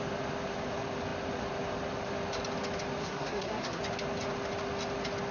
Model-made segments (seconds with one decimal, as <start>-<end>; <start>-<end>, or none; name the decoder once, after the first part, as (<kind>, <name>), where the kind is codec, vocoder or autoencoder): 3.0-3.8 (codec, SNAC)